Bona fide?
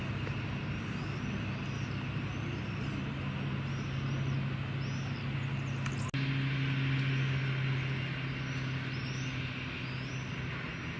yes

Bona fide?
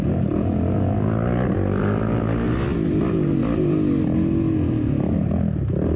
yes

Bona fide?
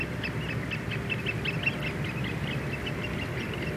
yes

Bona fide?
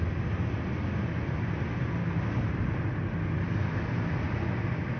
yes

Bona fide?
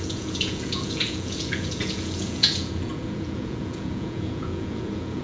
no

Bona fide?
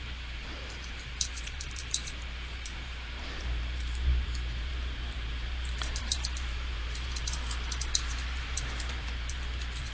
no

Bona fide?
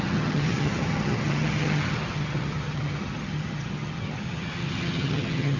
no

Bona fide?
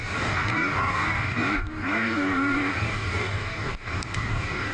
no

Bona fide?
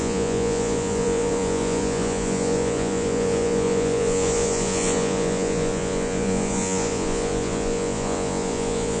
no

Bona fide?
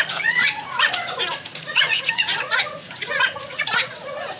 no